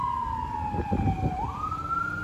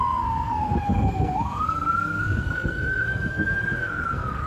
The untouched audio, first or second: first